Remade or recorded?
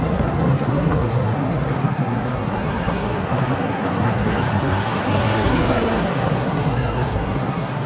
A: remade